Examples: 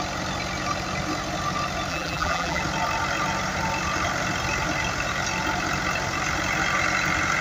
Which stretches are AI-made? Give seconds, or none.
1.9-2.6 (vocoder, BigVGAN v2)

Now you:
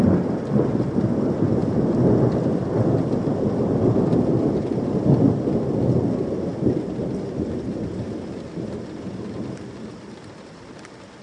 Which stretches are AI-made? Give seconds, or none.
none

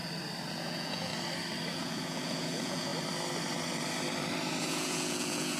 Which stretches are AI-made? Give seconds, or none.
0.5-1.1 (vocoder, Vocos); 1.7-2.9; 4.6-5.6

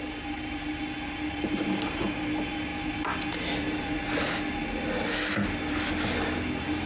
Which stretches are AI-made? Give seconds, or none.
none

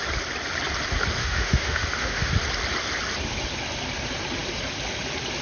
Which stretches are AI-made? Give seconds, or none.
1.2-2.3 (autoencoder, DAC-VAE)